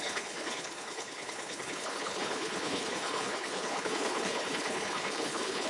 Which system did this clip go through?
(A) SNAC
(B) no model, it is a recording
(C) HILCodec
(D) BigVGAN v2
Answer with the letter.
C